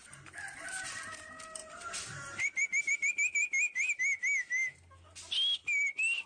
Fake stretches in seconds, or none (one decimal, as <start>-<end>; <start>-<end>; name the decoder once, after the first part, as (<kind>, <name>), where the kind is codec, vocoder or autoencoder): 1.6-4.0 (vocoder, BigVGAN v2); 5.6-6.3